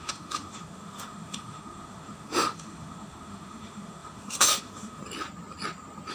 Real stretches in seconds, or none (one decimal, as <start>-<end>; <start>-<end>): 5.0-6.1